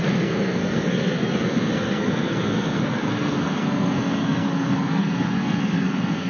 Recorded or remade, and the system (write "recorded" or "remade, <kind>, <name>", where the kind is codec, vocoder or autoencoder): remade, codec, SNAC